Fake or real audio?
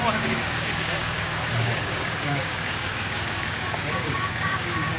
fake